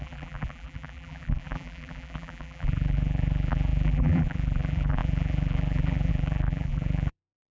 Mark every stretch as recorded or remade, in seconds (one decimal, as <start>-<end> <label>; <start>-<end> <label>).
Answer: 0.0-7.5 remade